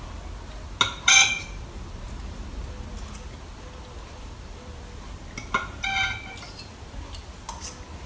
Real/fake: real